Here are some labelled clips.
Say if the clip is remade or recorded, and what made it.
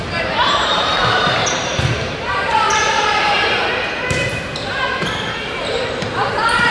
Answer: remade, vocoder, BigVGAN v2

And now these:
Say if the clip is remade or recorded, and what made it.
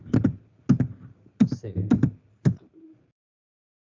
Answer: recorded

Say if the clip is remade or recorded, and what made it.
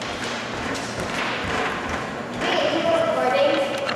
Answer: remade, vocoder, BigVGAN v2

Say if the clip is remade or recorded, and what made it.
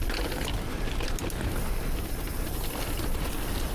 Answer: recorded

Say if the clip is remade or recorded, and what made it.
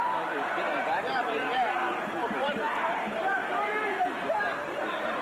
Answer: remade, vocoder, BigVGAN v2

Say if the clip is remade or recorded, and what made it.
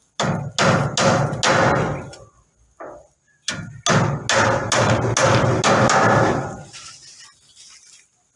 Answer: recorded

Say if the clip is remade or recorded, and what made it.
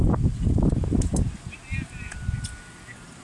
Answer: recorded